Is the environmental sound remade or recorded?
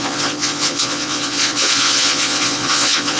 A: remade